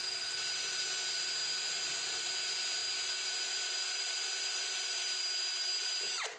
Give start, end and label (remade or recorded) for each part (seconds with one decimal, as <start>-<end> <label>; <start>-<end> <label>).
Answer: 0.0-0.8 remade; 0.8-1.4 recorded; 1.4-2.3 remade; 2.3-2.8 recorded; 2.8-6.0 remade; 6.0-6.4 recorded